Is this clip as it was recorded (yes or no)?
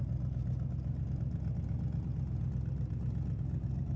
yes